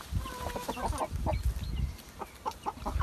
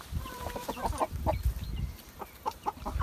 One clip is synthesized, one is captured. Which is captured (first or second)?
first